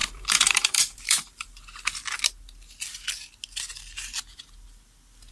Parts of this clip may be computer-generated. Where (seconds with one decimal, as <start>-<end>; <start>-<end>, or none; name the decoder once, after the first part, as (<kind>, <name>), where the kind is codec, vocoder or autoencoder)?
0.0-1.6 (vocoder, BigVGAN v2)